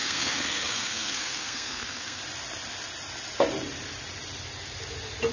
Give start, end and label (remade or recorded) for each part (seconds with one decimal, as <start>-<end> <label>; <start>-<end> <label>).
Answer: 0.0-2.2 remade; 2.2-5.3 recorded